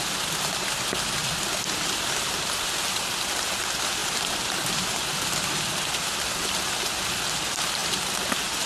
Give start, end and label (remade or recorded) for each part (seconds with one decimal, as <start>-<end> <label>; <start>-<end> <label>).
0.0-8.7 recorded